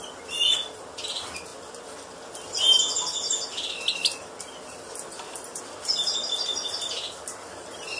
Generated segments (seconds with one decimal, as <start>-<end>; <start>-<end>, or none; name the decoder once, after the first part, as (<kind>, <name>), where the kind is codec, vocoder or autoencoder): none